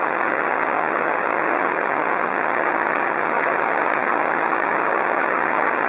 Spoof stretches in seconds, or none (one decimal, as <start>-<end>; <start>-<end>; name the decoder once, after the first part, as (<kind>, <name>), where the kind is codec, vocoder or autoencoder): 0.0-5.9 (vocoder, HiFi-GAN)